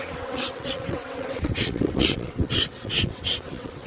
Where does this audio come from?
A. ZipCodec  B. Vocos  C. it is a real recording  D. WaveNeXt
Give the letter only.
D